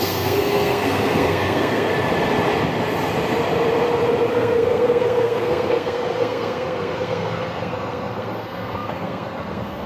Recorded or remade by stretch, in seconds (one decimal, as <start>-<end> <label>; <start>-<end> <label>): 0.0-1.9 remade; 1.9-4.3 recorded; 4.3-9.9 remade